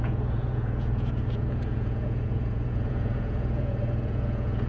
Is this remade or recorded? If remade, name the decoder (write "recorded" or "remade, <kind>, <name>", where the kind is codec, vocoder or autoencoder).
remade, vocoder, Vocos